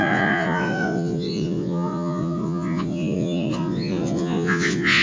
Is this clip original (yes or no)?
no